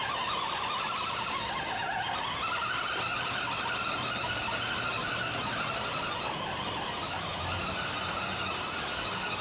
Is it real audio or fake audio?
real